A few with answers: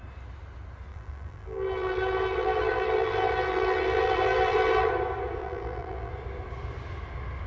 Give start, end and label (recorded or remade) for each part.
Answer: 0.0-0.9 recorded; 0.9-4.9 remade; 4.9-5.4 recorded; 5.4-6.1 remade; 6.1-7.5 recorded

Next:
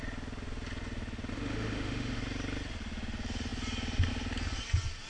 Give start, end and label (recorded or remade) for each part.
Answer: 0.0-1.3 recorded; 1.3-2.2 remade; 2.2-5.1 recorded

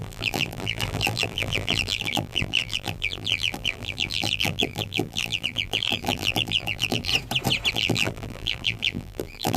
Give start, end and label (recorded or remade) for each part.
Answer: 0.0-7.1 remade; 7.1-7.7 recorded; 7.7-9.6 remade

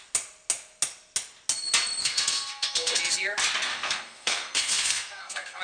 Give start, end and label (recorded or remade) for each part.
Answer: 0.0-2.0 recorded; 2.0-3.0 remade; 3.0-3.7 recorded; 3.7-5.6 remade

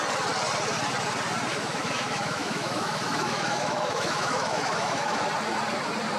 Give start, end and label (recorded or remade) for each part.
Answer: 0.0-1.5 recorded; 1.5-5.2 remade; 5.2-6.2 recorded

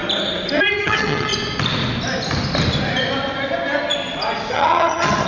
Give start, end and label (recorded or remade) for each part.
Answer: 0.0-0.8 recorded; 0.8-1.3 remade; 1.3-4.5 recorded; 4.5-5.3 remade

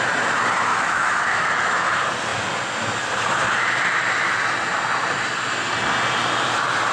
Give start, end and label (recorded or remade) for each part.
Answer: 0.0-0.7 recorded; 0.7-1.9 remade; 1.9-6.9 recorded